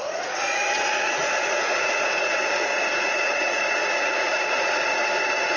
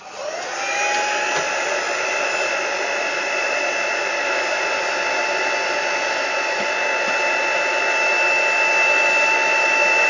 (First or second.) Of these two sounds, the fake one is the first